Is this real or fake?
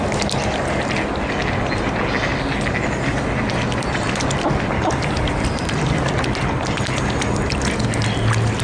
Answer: real